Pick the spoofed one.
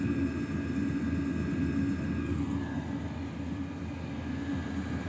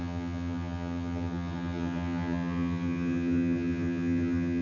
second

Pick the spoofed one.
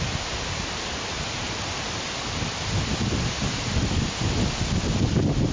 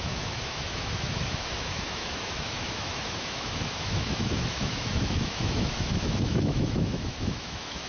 second